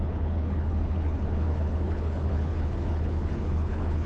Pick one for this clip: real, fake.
fake